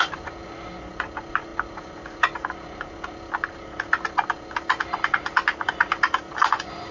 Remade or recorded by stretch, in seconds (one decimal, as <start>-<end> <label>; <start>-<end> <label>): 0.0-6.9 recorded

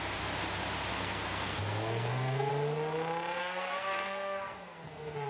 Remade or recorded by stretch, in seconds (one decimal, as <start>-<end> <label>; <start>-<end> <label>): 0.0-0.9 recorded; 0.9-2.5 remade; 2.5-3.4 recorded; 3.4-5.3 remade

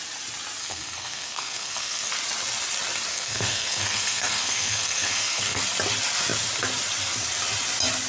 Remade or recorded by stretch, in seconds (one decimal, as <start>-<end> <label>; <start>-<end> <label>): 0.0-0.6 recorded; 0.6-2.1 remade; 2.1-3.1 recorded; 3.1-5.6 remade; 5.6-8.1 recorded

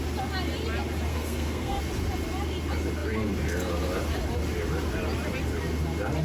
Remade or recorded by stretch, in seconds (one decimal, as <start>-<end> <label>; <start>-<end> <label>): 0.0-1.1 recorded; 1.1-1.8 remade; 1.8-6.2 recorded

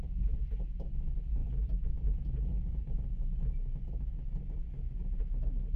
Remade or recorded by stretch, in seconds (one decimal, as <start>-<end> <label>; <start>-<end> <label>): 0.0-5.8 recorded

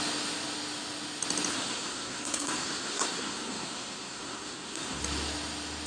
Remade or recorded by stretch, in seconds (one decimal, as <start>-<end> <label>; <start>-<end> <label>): 0.0-1.5 recorded; 1.5-5.0 remade; 5.0-5.9 recorded

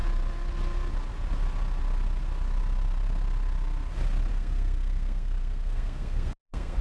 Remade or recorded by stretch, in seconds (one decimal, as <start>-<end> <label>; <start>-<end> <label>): 0.0-4.3 recorded; 4.3-6.8 remade

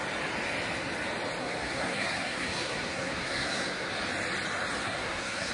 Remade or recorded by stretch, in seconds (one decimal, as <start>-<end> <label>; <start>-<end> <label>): 0.0-1.4 recorded; 1.4-3.9 remade; 3.9-4.8 recorded; 4.8-5.5 remade